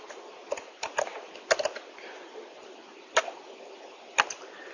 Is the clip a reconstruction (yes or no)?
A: no